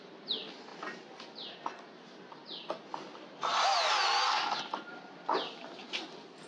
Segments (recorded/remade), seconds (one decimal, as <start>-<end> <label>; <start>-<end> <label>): 0.0-6.5 recorded